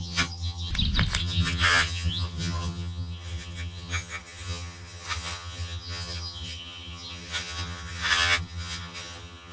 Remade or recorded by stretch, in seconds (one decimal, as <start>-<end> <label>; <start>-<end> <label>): 0.0-0.7 remade; 0.7-1.2 recorded; 1.2-9.5 remade

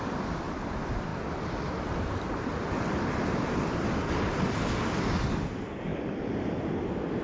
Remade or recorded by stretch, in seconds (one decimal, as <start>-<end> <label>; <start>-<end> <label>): 0.0-7.2 recorded

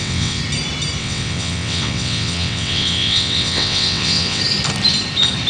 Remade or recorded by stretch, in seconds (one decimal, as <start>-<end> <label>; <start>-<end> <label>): 0.0-0.4 remade; 0.4-1.0 recorded; 1.0-4.4 remade; 4.4-5.5 recorded

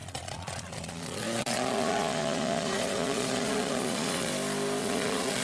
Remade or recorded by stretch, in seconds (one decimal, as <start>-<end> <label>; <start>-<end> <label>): 0.0-4.3 remade; 4.3-4.8 recorded; 4.8-5.4 remade

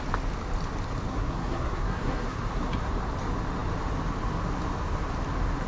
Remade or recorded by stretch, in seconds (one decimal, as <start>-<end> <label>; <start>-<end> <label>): 0.0-1.1 recorded; 1.1-2.9 remade; 2.9-5.7 recorded

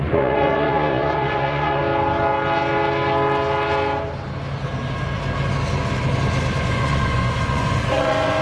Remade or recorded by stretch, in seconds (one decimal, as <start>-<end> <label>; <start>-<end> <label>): 0.0-1.8 remade; 1.8-6.6 recorded; 6.6-8.4 remade